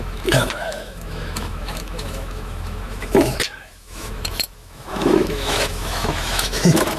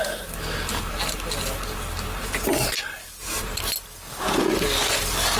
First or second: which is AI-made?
first